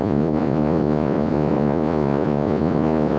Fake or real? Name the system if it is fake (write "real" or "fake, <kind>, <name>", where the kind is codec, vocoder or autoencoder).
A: fake, vocoder, Vocos